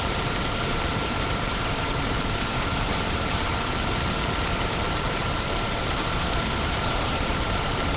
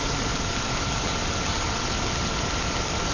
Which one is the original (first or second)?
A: second